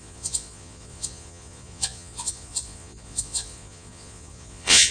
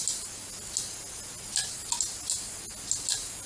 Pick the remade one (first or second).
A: first